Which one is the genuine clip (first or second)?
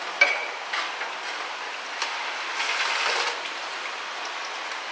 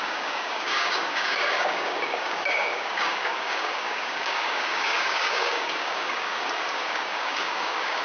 first